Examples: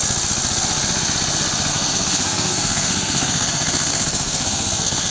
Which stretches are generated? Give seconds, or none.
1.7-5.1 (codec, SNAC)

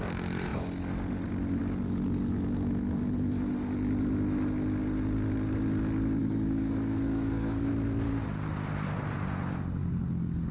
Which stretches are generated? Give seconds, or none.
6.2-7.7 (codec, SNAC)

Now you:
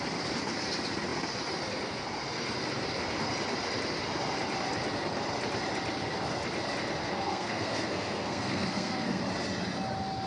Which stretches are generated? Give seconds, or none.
7.0-9.2 (codec, SNAC)

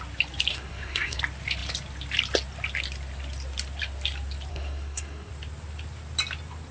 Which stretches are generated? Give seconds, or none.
0.5-1.2 (codec, SNAC); 4.5-5.3